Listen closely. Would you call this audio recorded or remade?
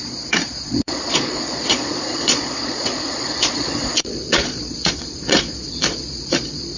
remade